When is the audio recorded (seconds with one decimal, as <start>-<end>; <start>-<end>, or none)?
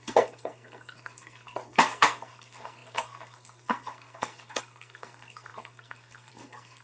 none